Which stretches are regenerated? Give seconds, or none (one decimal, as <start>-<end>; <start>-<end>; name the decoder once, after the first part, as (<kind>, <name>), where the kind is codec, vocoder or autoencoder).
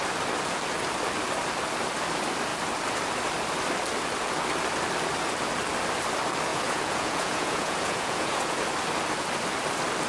6.5-8.6 (vocoder, Vocos)